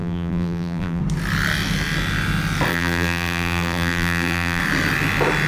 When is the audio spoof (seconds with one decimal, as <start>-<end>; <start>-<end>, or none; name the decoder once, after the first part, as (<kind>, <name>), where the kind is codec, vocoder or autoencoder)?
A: 0.0-1.0 (vocoder, BigVGAN v2); 2.7-4.6